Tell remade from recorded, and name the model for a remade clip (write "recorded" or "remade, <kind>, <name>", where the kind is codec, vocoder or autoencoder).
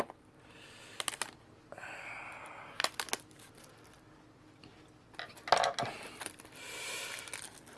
recorded